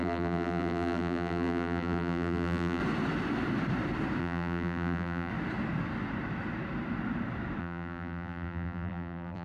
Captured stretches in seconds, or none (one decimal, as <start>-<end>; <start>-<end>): 2.8-4.2; 5.3-7.6